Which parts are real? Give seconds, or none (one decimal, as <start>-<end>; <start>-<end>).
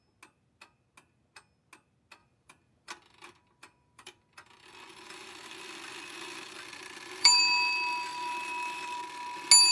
0.0-2.2; 7.4-8.1; 9.0-9.7